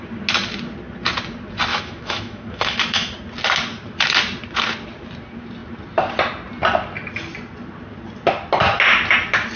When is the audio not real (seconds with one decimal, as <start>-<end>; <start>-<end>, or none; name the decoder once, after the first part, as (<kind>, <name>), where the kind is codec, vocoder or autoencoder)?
1.7-3.1 (autoencoder, DAC-VAE)